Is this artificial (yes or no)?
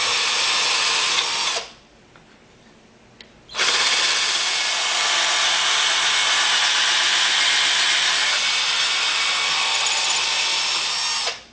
no